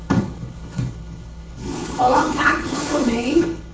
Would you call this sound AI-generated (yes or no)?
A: yes